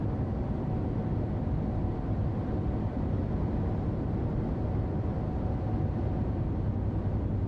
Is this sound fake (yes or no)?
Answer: no